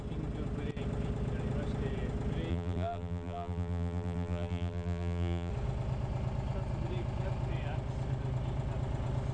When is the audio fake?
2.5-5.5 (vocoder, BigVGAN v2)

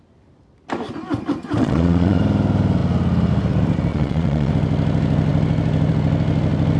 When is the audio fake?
1.6-2.2 (vocoder, Vocos); 3.9-4.5